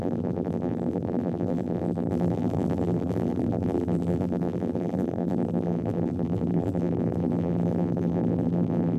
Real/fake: fake